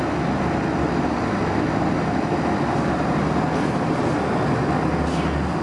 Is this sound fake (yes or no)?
no